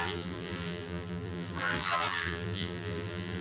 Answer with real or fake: fake